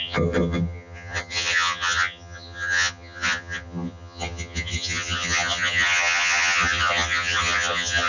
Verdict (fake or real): fake